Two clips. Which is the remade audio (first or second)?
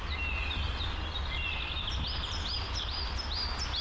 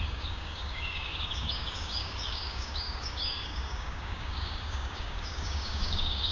second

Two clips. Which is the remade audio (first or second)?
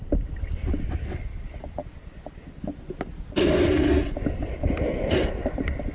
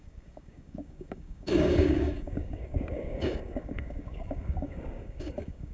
second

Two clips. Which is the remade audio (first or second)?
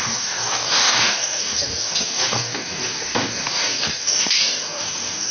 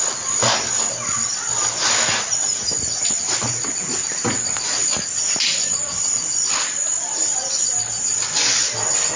first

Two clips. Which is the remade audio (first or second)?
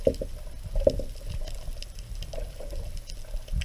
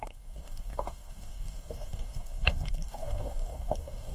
second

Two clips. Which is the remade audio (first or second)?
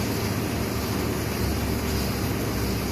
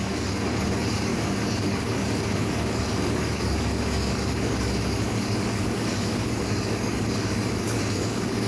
second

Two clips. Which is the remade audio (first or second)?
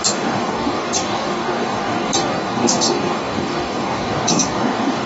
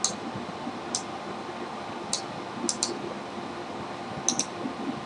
first